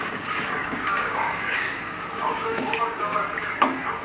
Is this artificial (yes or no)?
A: yes